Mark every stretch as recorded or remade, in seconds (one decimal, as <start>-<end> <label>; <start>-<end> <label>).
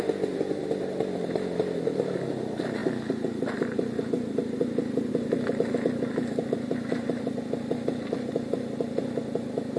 0.0-9.8 recorded